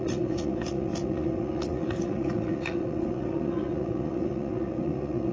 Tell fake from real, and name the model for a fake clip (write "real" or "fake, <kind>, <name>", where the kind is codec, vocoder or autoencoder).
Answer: fake, vocoder, Vocos